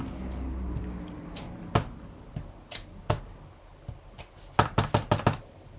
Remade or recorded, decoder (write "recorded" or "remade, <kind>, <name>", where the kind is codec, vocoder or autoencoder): recorded